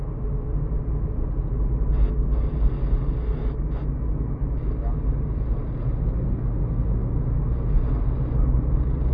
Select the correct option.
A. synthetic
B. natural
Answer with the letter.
B